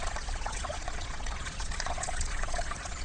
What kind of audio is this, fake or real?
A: fake